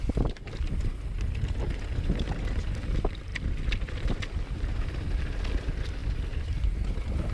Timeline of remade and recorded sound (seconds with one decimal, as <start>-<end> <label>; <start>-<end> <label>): 0.0-1.6 recorded; 1.6-2.1 remade; 2.1-3.3 recorded; 3.3-5.2 remade; 5.2-6.0 recorded; 6.0-6.8 remade; 6.8-7.3 recorded